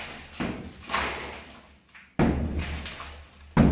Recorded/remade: recorded